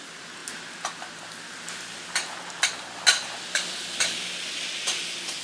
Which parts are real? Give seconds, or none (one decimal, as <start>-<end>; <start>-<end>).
0.0-5.4